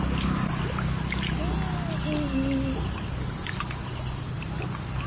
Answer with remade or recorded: recorded